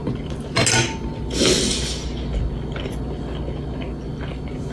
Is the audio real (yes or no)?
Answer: yes